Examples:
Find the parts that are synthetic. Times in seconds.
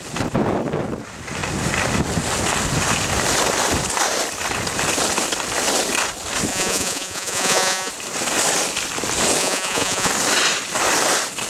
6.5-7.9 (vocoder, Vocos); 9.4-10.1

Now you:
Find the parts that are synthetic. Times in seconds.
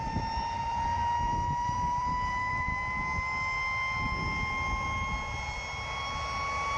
0.0-2.7 (vocoder, BigVGAN v2)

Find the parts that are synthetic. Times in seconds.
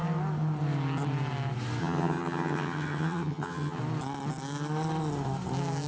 1.8-3.8 (vocoder, HiFi-GAN)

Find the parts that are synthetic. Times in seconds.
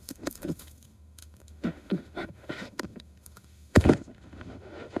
0.0-5.0 (autoencoder, DAC-VAE)